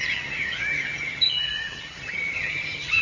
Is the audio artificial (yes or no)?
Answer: yes